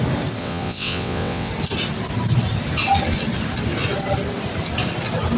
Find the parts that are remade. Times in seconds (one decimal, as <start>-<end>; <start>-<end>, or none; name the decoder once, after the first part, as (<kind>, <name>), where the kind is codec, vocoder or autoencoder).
0.4-1.5 (vocoder, WaveNeXt)